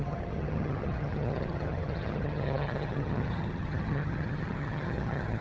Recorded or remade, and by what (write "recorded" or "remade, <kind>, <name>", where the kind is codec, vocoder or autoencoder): remade, vocoder, HiFi-GAN